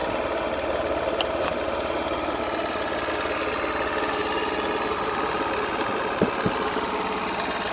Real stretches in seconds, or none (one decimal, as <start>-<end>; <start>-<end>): 2.4-7.7